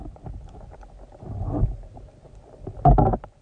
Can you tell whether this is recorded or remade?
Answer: recorded